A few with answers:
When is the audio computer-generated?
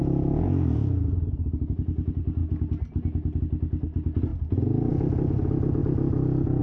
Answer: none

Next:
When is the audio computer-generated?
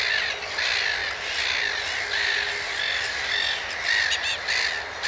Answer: none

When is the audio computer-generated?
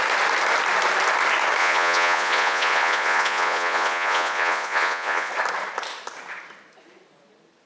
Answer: 1.6-5.3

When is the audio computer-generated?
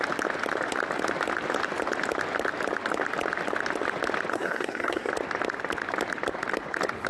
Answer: 4.3-5.1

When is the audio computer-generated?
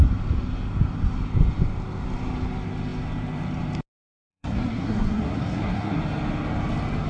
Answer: 4.3-6.0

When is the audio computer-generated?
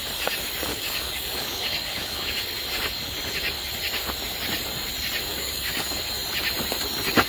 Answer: 0.7-2.4; 5.3-6.0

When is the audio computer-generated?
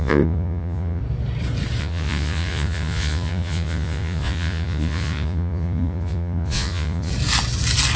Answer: 0.0-1.0; 1.8-7.1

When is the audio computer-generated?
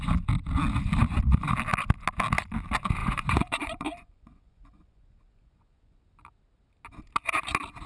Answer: 3.0-6.2